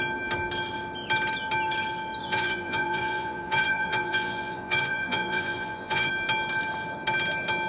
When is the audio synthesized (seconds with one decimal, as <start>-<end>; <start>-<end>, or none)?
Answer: 2.2-6.1